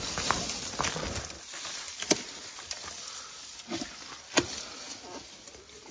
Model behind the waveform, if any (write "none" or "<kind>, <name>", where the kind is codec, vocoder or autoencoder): none